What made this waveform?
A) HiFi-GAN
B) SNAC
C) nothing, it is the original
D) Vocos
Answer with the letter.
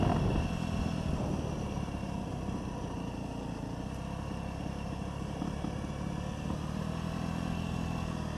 C